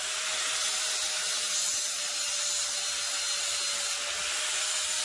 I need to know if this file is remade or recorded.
recorded